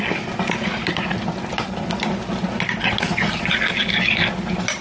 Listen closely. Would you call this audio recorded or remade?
recorded